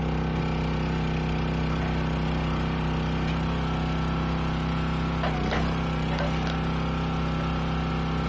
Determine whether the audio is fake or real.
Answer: real